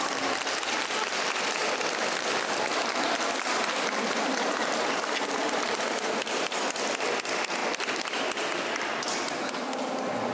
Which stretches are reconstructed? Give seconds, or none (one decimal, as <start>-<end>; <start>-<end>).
none